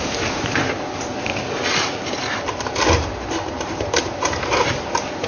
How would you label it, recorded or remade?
recorded